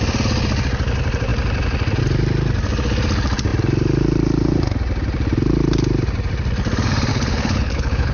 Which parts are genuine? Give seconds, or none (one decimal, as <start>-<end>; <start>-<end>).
0.0-7.1